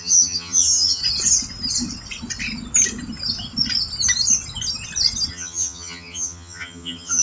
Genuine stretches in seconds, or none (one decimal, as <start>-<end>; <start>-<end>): 1.0-5.3